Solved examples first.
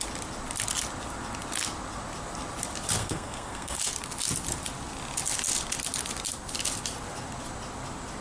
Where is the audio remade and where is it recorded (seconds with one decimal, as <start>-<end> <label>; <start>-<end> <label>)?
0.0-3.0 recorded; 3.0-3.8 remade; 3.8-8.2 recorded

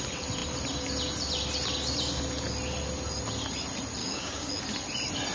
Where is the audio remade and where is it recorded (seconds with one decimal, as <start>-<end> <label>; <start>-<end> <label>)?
0.0-4.0 recorded; 4.0-4.5 remade; 4.5-5.3 recorded

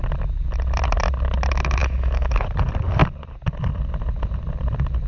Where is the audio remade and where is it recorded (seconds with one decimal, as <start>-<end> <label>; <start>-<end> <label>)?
0.0-1.8 recorded; 1.8-2.4 remade; 2.4-5.1 recorded

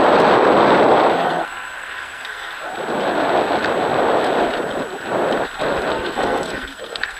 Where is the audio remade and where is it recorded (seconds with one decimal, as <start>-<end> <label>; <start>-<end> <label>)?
0.0-1.1 recorded; 1.1-2.7 remade; 2.7-5.9 recorded; 5.9-7.2 remade

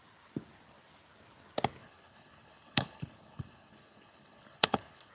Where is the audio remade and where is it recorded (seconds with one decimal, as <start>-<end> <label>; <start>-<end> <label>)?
0.0-1.8 recorded; 1.8-5.1 remade

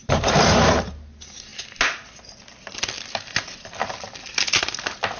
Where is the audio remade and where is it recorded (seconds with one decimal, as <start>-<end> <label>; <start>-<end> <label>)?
0.0-1.5 remade; 1.5-4.6 recorded; 4.6-5.2 remade